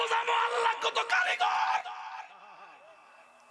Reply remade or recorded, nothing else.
recorded